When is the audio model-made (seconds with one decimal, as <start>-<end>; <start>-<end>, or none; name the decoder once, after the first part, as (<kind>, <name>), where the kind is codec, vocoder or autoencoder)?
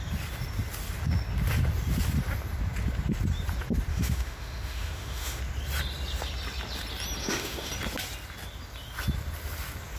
3.9-5.4 (autoencoder, DAC-VAE); 7.2-7.7